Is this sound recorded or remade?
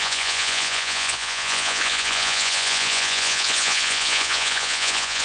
remade